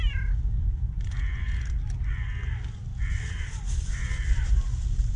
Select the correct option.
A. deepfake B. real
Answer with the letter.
B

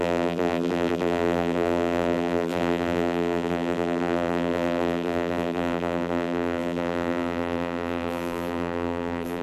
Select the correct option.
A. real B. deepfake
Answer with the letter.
B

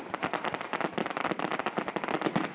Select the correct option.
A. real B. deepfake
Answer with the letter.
A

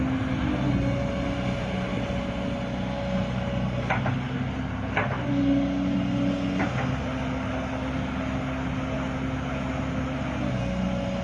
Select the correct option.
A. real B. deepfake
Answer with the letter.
A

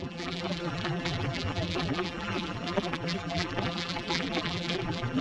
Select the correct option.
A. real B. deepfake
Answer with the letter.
B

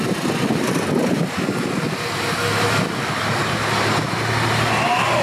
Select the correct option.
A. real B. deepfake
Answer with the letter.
A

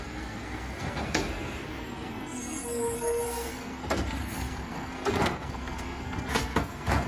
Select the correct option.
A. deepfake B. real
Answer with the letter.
A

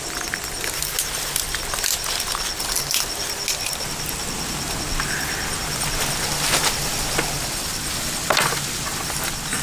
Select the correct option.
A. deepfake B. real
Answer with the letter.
B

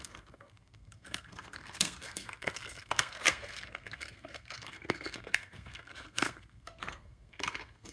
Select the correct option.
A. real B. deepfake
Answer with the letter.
B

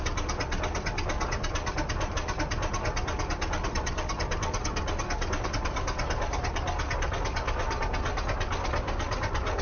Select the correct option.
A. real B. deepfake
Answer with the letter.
A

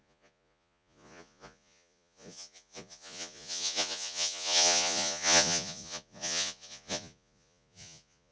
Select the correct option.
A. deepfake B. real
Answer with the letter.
A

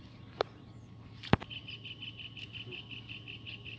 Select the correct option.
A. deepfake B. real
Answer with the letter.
B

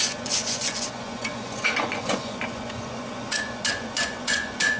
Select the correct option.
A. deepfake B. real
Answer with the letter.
A